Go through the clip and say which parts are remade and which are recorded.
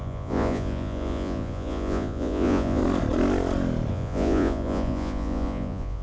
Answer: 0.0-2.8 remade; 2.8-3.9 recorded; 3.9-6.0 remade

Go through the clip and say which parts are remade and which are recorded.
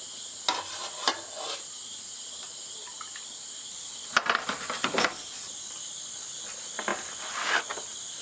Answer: 0.0-8.2 recorded